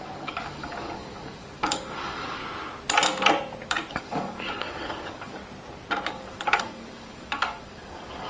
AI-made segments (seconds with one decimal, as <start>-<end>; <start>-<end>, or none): 0.0-2.4; 3.9-5.4; 6.1-8.3